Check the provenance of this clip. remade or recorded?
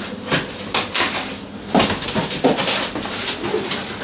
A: recorded